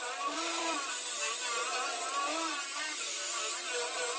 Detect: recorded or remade remade